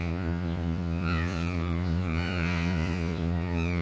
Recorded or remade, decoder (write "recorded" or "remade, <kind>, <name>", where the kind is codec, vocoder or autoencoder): remade, vocoder, Vocos